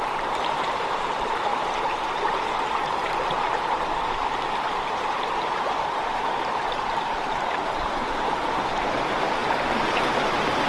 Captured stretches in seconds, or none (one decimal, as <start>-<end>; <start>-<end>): 1.5-4.2; 9.4-10.0